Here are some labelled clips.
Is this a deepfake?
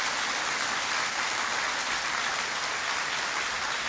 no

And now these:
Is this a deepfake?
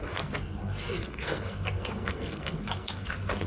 yes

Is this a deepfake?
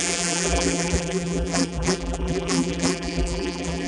yes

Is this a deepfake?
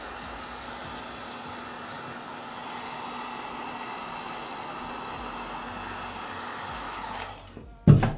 no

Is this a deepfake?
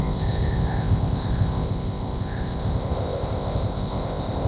yes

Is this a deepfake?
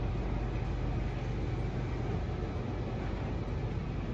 no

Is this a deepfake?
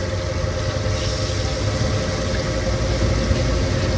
no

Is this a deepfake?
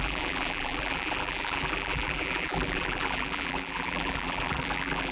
yes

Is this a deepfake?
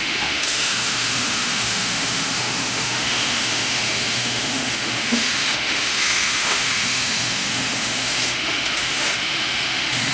yes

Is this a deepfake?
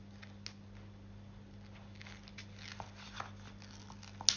no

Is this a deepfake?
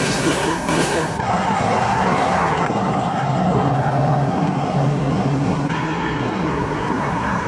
yes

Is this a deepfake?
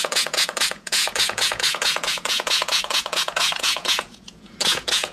yes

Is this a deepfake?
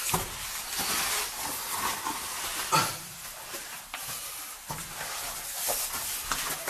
no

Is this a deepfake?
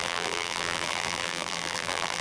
yes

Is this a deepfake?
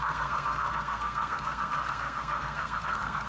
yes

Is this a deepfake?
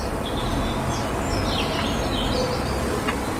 no